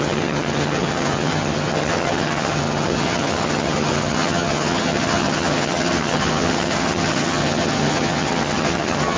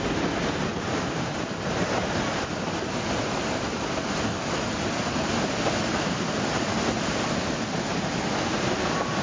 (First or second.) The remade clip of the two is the first